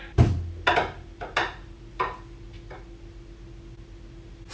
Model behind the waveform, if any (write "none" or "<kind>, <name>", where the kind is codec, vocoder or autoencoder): none